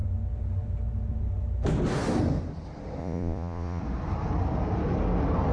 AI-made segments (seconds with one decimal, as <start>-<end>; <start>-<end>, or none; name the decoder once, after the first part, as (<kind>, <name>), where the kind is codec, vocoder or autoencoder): 3.0-3.8 (vocoder, Vocos)